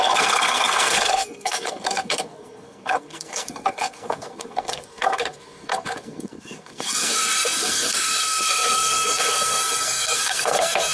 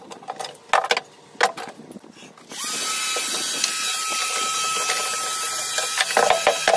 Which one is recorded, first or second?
second